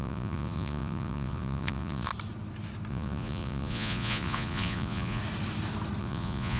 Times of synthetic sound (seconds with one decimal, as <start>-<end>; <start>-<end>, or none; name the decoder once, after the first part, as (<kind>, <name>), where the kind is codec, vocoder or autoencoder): 0.0-2.1 (vocoder, Vocos); 2.9-5.2; 6.0-6.6